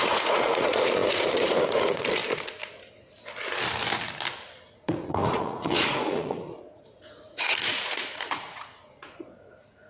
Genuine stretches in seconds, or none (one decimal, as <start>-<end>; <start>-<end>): 2.2-4.7